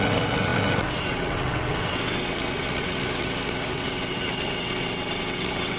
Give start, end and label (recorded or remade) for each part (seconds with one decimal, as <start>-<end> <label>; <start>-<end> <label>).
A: 0.0-5.8 remade